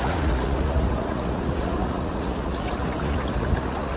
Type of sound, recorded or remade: remade